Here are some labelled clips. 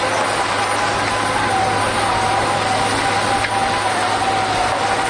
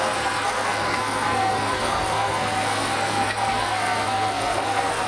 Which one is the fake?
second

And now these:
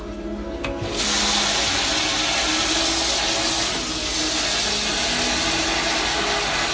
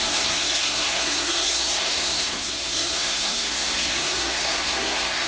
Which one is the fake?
second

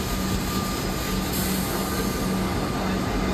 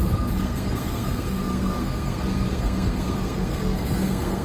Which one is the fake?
second